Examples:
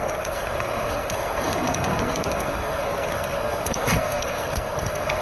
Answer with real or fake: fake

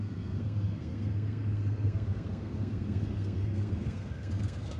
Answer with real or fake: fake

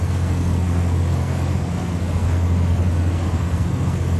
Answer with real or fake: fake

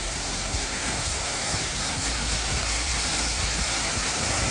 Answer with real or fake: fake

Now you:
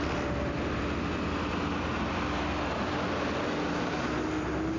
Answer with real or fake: real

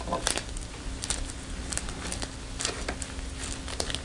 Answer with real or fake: real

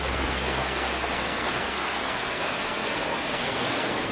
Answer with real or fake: fake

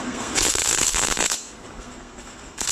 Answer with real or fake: fake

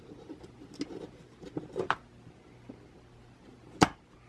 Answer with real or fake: real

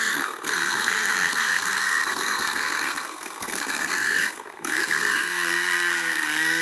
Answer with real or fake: fake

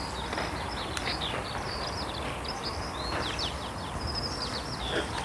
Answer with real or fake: real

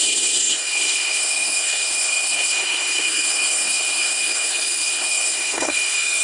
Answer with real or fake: fake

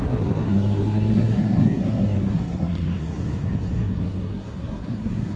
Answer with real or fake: fake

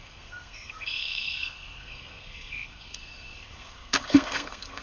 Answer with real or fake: fake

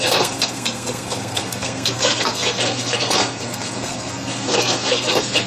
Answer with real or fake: fake